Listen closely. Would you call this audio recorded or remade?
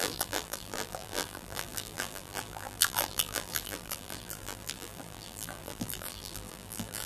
remade